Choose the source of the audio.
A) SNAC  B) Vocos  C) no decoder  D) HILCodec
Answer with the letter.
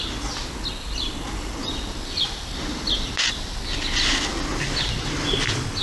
C